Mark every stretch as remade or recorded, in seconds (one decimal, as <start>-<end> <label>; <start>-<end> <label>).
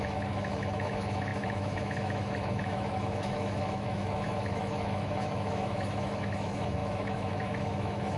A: 0.0-8.2 remade